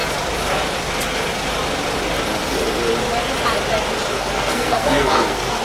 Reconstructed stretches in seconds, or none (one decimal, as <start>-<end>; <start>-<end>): 4.1-5.6